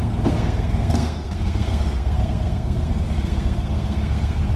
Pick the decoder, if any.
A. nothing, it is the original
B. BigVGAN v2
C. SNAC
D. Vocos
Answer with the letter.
C